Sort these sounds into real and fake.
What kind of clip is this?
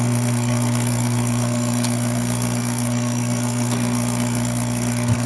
fake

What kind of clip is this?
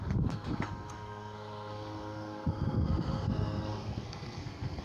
fake